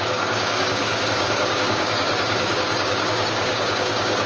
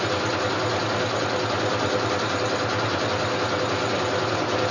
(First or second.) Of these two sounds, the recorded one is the second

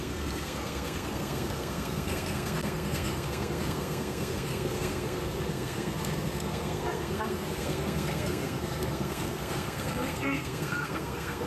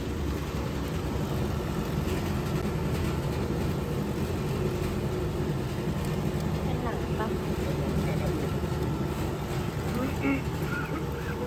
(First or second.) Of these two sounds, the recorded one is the second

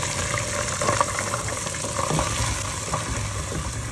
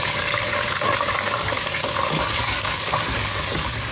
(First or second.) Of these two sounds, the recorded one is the first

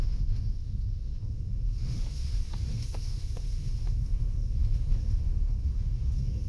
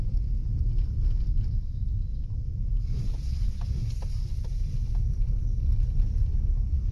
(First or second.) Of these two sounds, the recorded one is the second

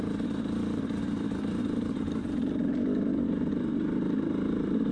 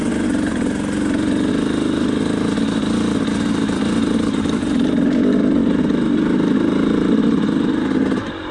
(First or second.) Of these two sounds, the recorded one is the second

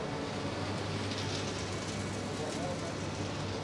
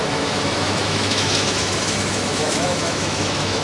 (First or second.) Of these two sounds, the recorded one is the first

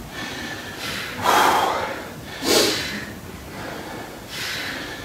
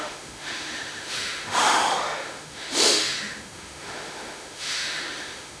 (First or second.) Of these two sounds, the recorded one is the first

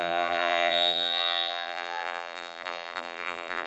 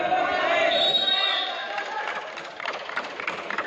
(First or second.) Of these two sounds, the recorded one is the second